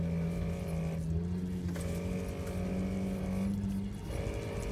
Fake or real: real